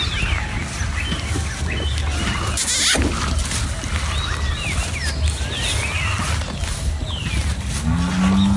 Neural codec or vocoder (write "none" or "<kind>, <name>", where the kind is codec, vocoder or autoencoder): none